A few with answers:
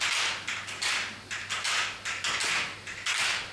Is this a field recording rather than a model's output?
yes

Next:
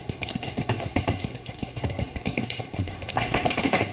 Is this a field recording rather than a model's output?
no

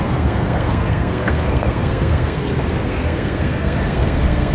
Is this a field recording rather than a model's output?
no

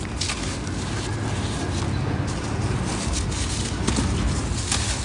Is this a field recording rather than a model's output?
yes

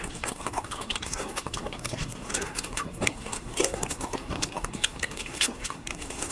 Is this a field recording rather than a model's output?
no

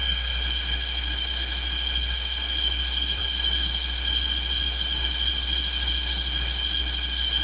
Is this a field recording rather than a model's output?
no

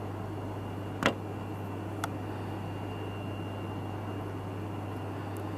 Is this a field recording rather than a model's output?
yes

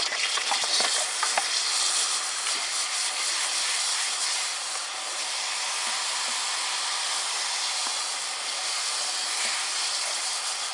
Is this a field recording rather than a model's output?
yes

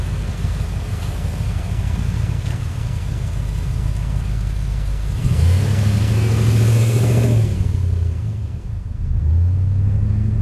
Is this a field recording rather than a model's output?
no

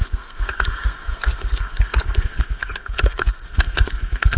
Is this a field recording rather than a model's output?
no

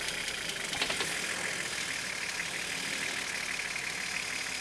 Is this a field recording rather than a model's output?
yes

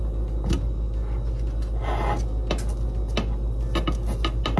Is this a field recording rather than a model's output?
yes